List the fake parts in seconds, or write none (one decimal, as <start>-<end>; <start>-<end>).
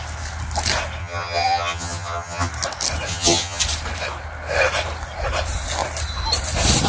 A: 1.0-2.5; 3.1-3.6